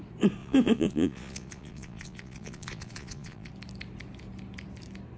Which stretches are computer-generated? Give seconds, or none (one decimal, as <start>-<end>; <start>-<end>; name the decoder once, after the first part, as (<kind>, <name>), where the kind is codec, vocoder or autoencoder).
0.4-3.5 (vocoder, Vocos)